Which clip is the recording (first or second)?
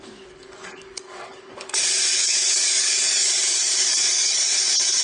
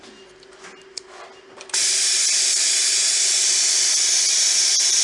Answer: second